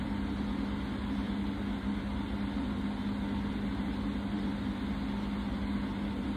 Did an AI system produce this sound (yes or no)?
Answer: no